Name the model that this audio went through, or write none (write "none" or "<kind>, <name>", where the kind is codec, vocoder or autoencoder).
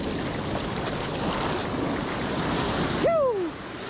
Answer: none